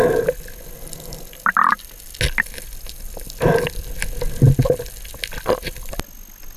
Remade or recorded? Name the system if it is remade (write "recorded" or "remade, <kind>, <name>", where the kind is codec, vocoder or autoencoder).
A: recorded